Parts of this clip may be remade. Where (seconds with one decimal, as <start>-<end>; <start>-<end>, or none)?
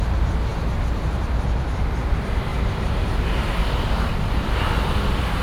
2.5-4.1